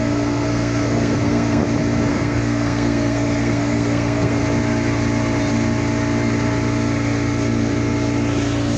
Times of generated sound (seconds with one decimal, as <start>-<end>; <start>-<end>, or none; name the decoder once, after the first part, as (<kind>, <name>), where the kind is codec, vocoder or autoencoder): 0.0-1.6 (codec, SNAC); 2.1-4.4